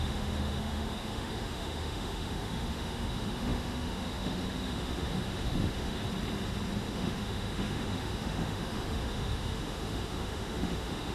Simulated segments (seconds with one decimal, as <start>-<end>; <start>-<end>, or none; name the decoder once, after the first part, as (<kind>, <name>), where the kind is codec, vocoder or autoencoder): 0.0-6.0 (autoencoder, DAC-VAE); 6.9-11.1